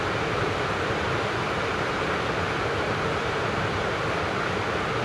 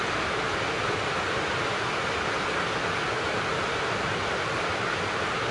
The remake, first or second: first